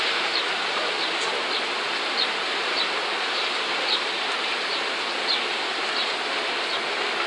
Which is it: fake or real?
fake